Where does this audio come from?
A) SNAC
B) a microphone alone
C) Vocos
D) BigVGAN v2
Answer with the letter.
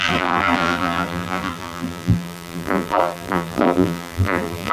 D